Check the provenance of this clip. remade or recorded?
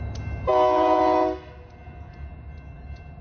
recorded